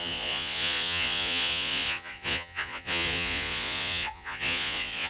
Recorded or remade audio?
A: remade